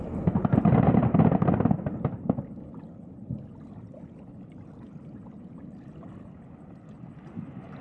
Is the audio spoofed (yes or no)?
no